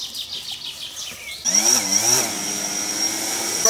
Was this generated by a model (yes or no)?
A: no